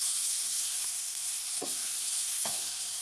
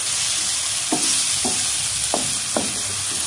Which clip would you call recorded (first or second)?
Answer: second